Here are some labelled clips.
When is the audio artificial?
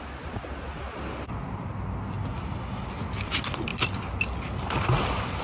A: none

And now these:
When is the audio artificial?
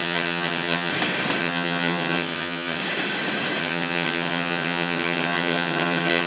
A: 0.0-0.9 (vocoder, HiFi-GAN); 1.4-2.8; 3.6-6.3